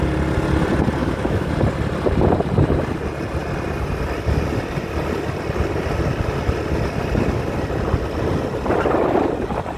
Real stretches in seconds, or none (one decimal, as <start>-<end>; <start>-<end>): 0.0-1.0; 1.5-9.8